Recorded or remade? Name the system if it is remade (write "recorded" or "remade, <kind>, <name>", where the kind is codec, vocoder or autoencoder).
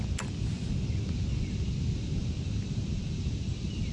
recorded